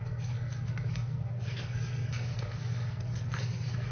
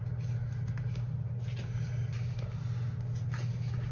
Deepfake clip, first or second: first